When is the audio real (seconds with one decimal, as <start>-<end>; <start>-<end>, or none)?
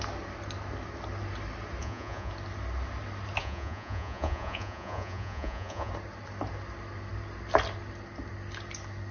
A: 0.0-1.8; 2.3-3.4; 5.9-9.1